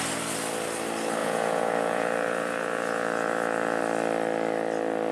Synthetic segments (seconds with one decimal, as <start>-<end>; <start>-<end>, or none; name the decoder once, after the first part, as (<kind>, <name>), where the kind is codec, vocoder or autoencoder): 1.2-3.8 (vocoder, Vocos)